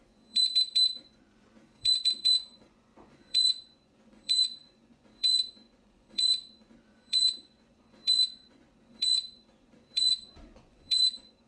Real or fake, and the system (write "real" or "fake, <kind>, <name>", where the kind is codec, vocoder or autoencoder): fake, vocoder, Vocos